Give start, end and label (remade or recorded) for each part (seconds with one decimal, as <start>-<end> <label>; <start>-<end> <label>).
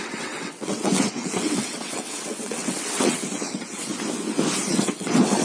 0.0-3.9 remade; 3.9-4.7 recorded; 4.7-5.4 remade